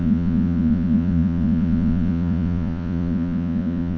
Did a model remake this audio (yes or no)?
yes